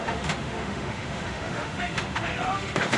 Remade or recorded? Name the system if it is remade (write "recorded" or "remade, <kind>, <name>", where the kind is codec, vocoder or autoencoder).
remade, autoencoder, DAC-VAE